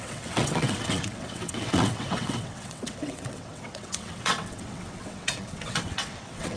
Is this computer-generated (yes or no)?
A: yes